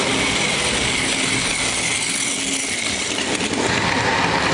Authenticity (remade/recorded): recorded